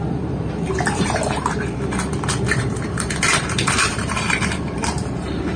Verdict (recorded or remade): remade